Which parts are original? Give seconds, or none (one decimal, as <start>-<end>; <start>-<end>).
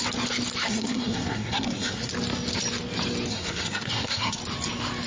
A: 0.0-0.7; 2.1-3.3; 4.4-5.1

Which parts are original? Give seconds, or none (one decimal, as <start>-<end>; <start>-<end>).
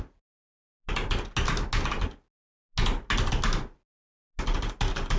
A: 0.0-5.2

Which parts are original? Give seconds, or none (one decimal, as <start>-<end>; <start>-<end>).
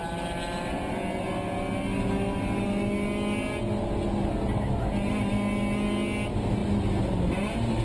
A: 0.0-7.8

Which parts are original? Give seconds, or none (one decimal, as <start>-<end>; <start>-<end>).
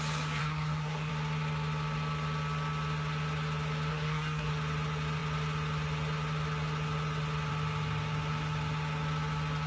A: 0.0-0.4; 1.1-3.9; 4.5-9.7